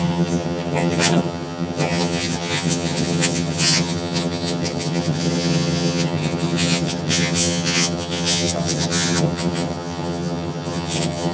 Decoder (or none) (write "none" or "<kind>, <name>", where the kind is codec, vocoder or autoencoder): vocoder, HiFi-GAN